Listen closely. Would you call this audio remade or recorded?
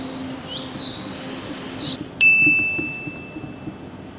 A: recorded